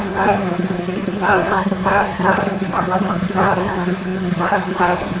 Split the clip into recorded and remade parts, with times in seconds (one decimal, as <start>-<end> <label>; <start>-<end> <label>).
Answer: 0.0-5.2 remade